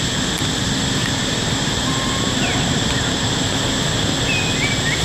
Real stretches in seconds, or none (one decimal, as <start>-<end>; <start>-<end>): 0.0-1.0; 3.6-5.0